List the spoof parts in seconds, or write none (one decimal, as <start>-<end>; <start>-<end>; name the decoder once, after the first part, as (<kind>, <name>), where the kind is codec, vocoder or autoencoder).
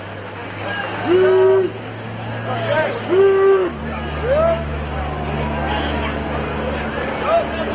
none